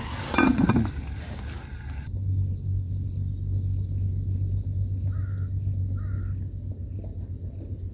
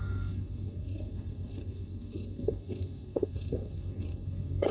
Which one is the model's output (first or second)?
second